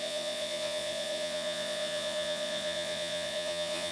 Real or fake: fake